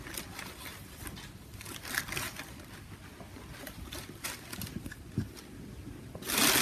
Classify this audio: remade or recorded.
recorded